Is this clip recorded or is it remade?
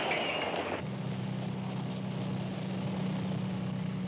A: recorded